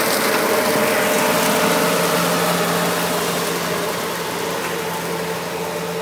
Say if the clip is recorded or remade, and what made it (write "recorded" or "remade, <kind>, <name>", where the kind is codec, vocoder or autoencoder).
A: recorded